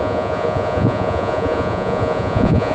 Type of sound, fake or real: fake